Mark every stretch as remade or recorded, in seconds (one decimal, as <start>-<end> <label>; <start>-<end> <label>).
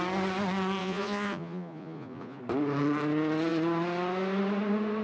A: 0.0-0.8 recorded; 0.8-2.4 remade; 2.4-5.0 recorded